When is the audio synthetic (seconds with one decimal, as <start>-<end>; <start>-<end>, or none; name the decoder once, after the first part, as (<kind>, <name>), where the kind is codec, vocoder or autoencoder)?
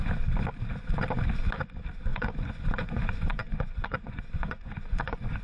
2.1-5.4 (vocoder, Vocos)